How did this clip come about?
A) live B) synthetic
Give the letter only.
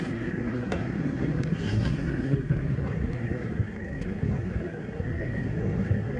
B